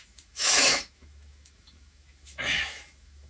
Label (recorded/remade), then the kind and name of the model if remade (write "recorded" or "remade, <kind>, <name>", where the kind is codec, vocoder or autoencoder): remade, autoencoder, DAC-VAE